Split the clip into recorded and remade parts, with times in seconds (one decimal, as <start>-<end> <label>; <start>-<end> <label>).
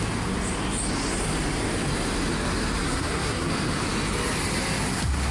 0.0-2.8 recorded; 2.8-3.5 remade; 3.5-5.3 recorded